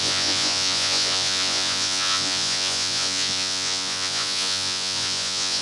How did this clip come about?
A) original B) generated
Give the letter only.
B